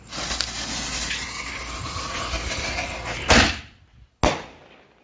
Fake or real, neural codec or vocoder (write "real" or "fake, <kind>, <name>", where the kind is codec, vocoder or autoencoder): real